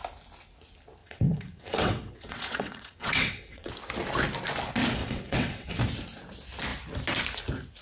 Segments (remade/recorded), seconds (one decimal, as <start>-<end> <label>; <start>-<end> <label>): 0.0-1.0 recorded; 1.0-3.7 remade; 3.7-5.0 recorded; 5.0-5.8 remade; 5.8-7.8 recorded